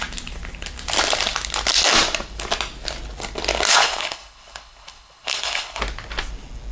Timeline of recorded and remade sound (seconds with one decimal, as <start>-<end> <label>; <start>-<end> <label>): 0.0-3.7 recorded; 3.7-5.8 remade; 5.8-6.7 recorded